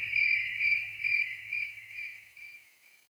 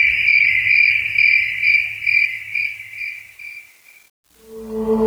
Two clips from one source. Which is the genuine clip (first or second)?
second